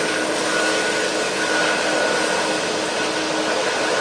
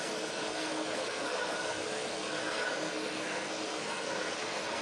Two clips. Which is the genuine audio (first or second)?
first